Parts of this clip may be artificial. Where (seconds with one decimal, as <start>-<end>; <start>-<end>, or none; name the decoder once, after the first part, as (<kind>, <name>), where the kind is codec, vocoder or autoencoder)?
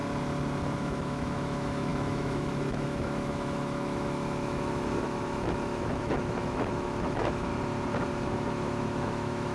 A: 0.7-7.5 (autoencoder, DAC-VAE); 8.1-9.5